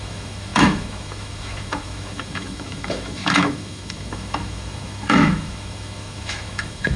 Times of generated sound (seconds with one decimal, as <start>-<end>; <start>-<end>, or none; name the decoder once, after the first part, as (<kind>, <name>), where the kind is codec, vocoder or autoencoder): 0.0-7.0 (autoencoder, DAC-VAE)